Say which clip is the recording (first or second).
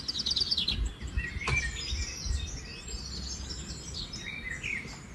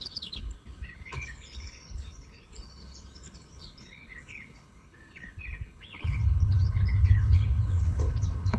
first